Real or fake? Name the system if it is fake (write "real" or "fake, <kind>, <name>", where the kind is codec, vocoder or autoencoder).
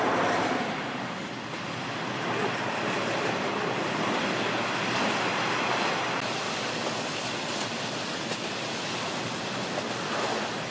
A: real